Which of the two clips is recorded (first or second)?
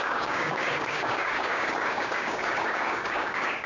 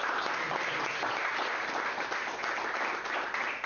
second